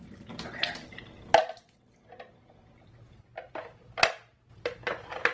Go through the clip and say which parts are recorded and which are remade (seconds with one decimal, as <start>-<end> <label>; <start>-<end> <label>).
0.0-5.3 recorded